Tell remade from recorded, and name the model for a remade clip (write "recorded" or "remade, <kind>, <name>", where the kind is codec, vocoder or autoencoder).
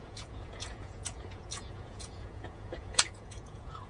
remade, vocoder, Vocos